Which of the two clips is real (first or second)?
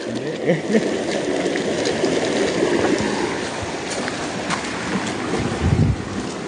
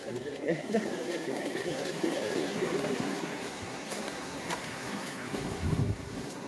first